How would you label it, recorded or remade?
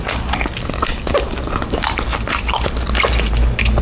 recorded